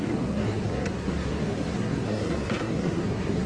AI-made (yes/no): yes